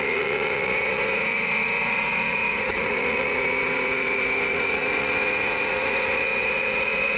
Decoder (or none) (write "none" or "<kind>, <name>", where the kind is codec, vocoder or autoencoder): vocoder, Vocos